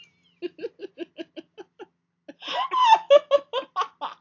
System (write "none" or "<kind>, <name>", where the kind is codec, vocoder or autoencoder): none